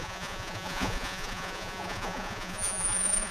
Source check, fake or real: fake